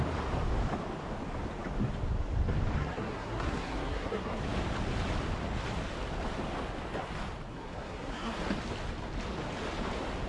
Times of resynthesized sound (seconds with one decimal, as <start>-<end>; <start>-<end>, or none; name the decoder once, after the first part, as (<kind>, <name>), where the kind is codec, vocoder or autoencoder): 2.8-4.4 (codec, SNAC); 7.5-8.4